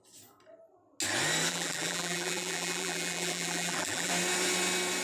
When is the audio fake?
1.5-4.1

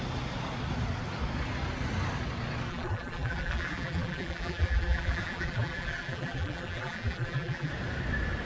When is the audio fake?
2.7-7.7

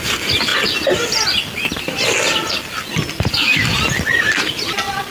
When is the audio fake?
none